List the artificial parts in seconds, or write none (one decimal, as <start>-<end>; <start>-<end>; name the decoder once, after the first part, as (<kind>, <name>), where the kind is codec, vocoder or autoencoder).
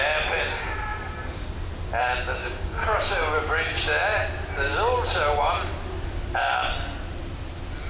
2.4-3.8 (codec, DAC)